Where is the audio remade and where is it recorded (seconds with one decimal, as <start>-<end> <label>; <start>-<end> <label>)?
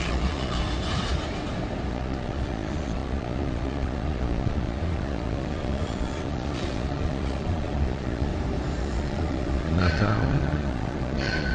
0.0-0.6 remade; 0.6-1.9 recorded; 1.9-8.3 remade; 8.3-8.8 recorded; 8.8-11.5 remade